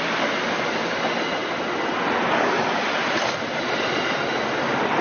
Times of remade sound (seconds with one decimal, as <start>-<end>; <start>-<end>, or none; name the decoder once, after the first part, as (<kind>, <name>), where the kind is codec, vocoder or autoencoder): none